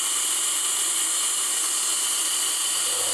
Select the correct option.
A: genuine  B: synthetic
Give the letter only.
A